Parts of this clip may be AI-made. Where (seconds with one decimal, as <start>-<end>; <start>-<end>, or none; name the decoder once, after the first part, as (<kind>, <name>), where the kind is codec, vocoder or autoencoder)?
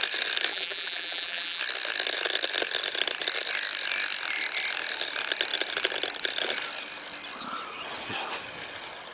0.5-1.6 (vocoder, BigVGAN v2)